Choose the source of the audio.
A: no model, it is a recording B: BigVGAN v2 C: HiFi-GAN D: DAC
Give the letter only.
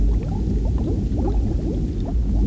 A